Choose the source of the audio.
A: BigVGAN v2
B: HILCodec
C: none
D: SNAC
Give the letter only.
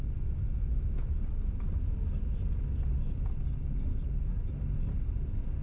C